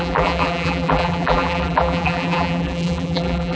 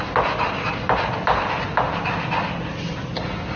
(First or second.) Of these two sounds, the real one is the second